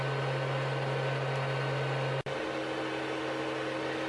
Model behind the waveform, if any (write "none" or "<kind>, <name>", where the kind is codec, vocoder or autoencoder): none